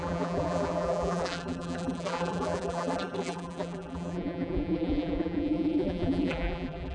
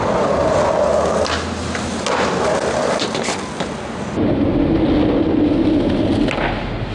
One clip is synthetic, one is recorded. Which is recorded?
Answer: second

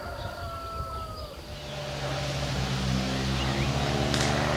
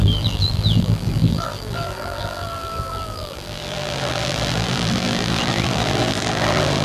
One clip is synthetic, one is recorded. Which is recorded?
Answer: first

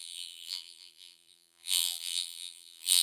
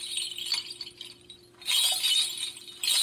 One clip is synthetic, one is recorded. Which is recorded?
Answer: second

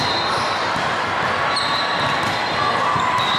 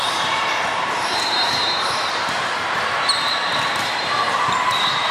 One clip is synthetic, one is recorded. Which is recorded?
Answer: first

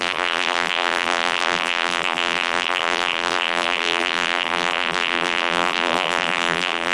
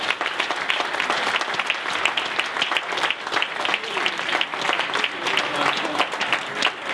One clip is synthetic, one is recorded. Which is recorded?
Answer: second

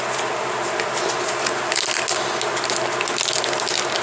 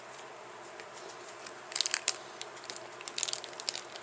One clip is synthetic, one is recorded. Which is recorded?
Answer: first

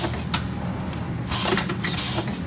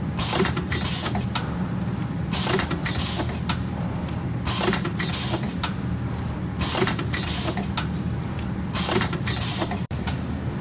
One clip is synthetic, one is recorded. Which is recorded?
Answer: first